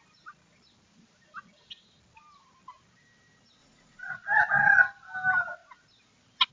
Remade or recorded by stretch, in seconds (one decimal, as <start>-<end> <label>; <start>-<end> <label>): 0.0-3.6 recorded; 3.6-4.1 remade; 4.1-6.5 recorded